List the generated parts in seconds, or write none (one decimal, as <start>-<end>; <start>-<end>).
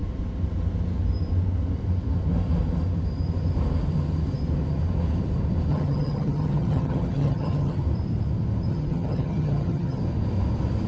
5.7-7.8; 8.7-10.0